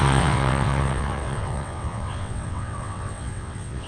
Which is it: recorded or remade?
remade